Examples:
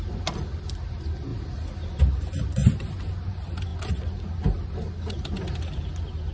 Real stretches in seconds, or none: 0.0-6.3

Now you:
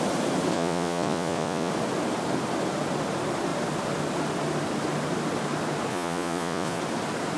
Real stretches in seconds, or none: 0.0-0.5; 1.7-5.9; 6.8-7.4

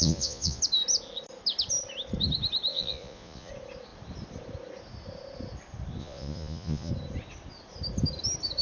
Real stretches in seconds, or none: 0.6-2.7; 3.5-6.0; 6.9-8.6

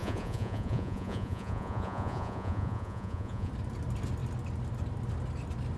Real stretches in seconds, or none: 3.5-5.8

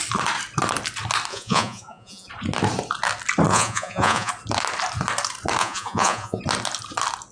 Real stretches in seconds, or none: 0.0-1.3; 2.3-3.5; 4.3-5.6; 6.4-7.3

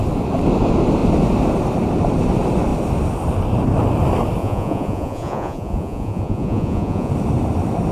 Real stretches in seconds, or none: 0.0-4.4; 7.1-7.9